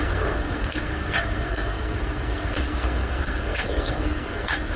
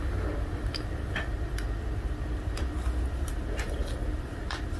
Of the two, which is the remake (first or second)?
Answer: first